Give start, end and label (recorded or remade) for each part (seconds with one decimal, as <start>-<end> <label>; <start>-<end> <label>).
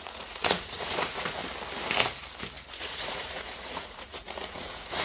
0.0-1.4 remade; 1.4-2.7 recorded; 2.7-5.0 remade